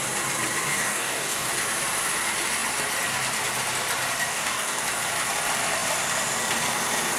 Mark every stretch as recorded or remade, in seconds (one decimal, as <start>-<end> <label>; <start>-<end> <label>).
0.0-0.7 recorded; 0.7-1.5 remade; 1.5-4.3 recorded; 4.3-4.8 remade; 4.8-7.2 recorded